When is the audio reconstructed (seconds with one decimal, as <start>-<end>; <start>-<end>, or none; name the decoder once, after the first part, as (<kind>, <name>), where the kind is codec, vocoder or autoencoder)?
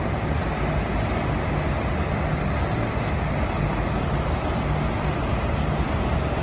none